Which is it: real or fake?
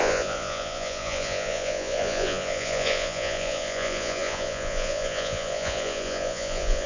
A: fake